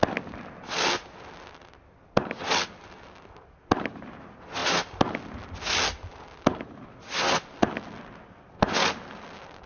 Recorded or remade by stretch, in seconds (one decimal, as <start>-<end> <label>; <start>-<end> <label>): 0.0-9.7 recorded